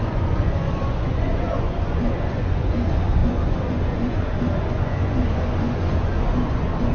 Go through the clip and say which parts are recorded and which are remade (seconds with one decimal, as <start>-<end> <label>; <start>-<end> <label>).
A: 0.0-6.9 remade